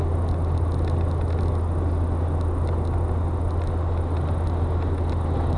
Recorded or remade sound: recorded